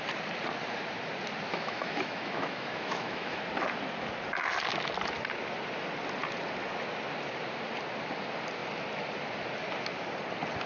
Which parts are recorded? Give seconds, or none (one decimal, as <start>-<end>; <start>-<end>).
0.0-1.5; 3.4-10.7